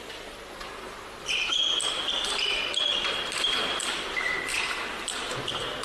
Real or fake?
real